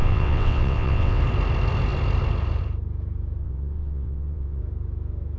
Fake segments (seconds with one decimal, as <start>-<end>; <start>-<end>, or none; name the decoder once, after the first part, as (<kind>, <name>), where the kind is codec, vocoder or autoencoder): 0.0-1.2 (vocoder, WaveNeXt); 3.4-4.6